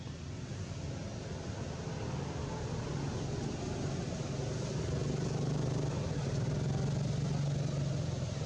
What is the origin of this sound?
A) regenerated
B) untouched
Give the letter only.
B